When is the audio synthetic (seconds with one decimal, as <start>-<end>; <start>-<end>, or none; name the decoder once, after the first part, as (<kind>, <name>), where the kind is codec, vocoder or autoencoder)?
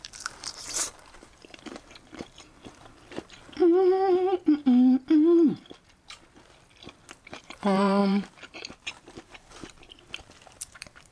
0.0-3.6 (vocoder, BigVGAN v2); 7.2-11.1